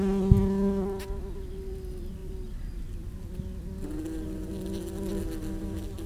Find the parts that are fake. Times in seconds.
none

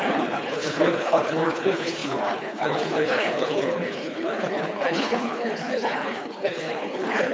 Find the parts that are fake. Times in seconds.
0.0-7.3 (codec, HILCodec)

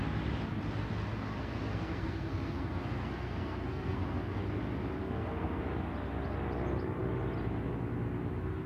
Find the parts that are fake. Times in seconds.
1.1-4.4 (codec, SNAC); 5.0-5.6